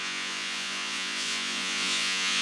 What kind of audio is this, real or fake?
fake